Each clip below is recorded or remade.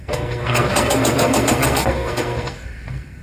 remade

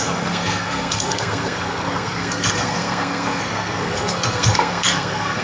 remade